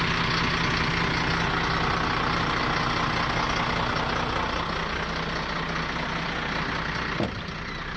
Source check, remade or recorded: recorded